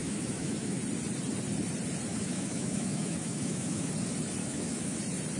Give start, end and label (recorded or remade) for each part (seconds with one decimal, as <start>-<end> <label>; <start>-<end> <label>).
0.0-0.8 remade; 0.8-2.1 recorded; 2.1-3.9 remade; 3.9-4.4 recorded; 4.4-5.0 remade; 5.0-5.4 recorded

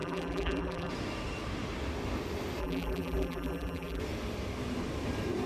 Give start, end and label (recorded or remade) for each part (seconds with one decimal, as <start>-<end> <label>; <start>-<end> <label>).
0.0-0.9 remade; 0.9-2.6 recorded; 2.6-4.0 remade; 4.0-5.5 recorded

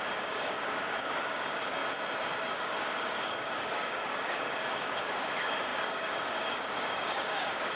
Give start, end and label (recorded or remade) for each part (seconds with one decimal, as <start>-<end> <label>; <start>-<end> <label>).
0.0-1.8 remade; 1.8-2.4 recorded; 2.4-7.8 remade

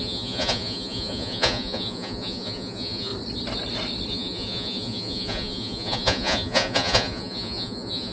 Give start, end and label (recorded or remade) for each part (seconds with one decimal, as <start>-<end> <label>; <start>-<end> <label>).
0.0-3.1 remade; 3.1-4.1 recorded; 4.1-8.1 remade

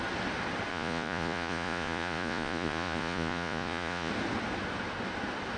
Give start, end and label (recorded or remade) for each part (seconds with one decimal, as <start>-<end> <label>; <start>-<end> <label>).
0.0-0.7 recorded; 0.7-4.1 remade; 4.1-5.6 recorded

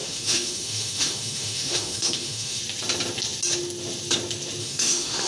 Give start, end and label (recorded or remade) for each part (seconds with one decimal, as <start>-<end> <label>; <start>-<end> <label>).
0.0-2.6 remade; 2.6-4.6 recorded; 4.6-5.3 remade